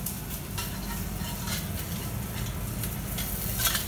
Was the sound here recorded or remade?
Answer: recorded